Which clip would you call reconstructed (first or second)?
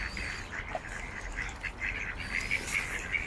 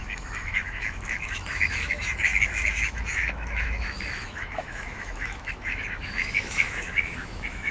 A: second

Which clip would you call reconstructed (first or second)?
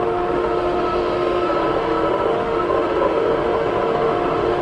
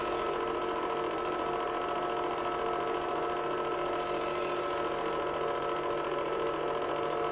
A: first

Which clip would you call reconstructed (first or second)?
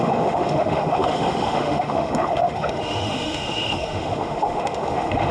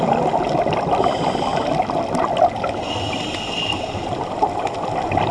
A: first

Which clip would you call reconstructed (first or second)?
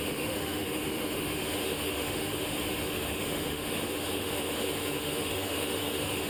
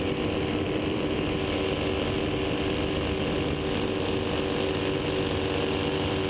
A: first